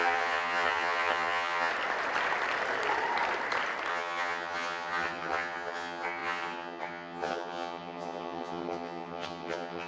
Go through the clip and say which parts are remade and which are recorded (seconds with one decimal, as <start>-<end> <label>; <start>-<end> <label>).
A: 0.0-1.7 remade; 1.7-3.9 recorded; 3.9-9.9 remade